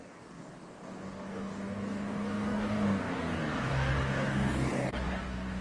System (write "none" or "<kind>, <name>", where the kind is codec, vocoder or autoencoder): codec, DAC